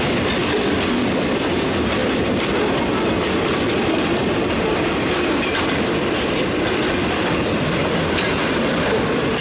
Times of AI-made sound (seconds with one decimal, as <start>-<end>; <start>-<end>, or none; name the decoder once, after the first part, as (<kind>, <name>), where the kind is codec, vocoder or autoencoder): none